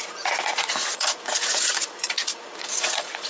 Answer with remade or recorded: remade